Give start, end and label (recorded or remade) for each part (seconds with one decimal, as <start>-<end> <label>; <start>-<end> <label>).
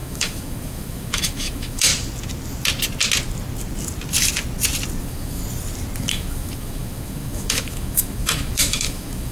0.0-1.9 remade; 1.9-5.0 recorded; 5.0-5.4 remade; 5.4-6.0 recorded; 6.0-9.3 remade